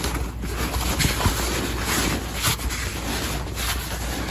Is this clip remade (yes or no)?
no